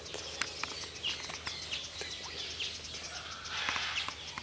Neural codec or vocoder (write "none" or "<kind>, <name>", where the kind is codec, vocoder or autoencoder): none